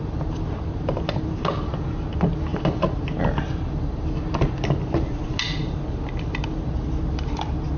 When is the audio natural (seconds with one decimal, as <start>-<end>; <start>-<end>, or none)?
0.0-7.8